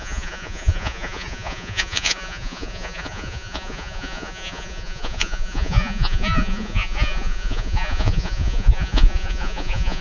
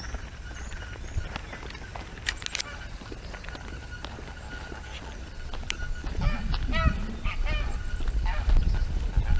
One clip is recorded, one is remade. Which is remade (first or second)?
first